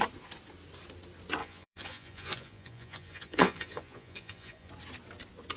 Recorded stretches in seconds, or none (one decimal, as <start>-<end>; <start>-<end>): 0.0-1.4; 4.7-5.6